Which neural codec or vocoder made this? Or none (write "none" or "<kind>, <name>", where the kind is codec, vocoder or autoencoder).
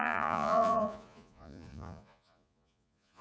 vocoder, Vocos